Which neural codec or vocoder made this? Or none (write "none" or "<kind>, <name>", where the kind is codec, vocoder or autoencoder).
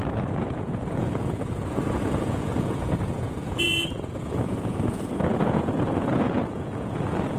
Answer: vocoder, Vocos